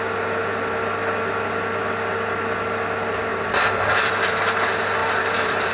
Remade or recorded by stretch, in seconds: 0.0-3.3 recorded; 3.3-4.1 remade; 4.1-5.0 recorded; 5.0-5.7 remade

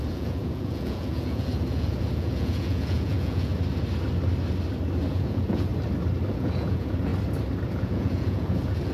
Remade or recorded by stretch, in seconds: 0.0-3.5 remade; 3.5-5.1 recorded; 5.1-5.7 remade; 5.7-6.3 recorded; 6.3-7.1 remade; 7.1-7.7 recorded; 7.7-8.9 remade

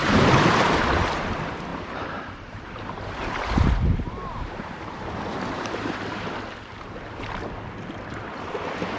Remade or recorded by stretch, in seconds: 0.0-0.8 remade; 0.8-1.7 recorded; 1.7-5.9 remade; 5.9-9.0 recorded

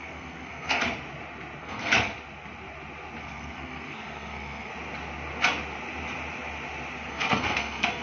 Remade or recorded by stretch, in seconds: 0.0-0.8 remade; 0.8-1.6 recorded; 1.6-2.1 remade; 2.1-3.2 recorded; 3.2-4.7 remade; 4.7-7.1 recorded; 7.1-8.0 remade

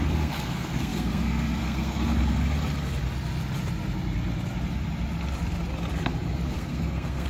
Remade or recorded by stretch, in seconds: 0.0-2.1 remade; 2.1-6.5 recorded; 6.5-7.3 remade

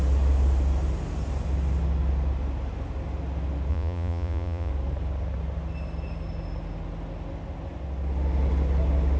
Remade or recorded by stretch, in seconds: 0.0-3.7 recorded; 3.7-4.7 remade; 4.7-9.2 recorded